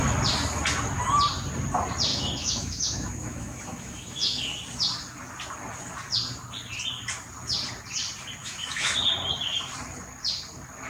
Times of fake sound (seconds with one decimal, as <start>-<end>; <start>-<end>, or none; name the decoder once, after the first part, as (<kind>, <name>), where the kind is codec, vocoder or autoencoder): 2.1-4.4 (autoencoder, DAC-VAE); 8.4-8.9